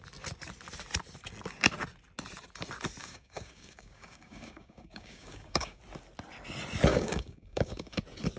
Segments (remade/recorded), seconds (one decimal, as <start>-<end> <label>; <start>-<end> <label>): 0.0-3.0 recorded; 3.0-5.8 remade; 5.8-6.9 recorded; 6.9-8.0 remade; 8.0-8.4 recorded